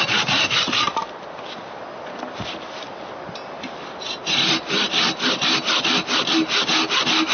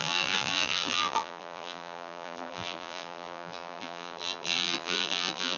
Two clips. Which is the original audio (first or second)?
first